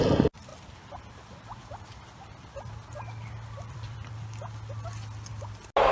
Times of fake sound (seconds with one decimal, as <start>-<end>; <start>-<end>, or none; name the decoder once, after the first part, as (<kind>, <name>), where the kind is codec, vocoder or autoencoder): 0.5-2.7 (vocoder, BigVGAN v2); 3.2-4.2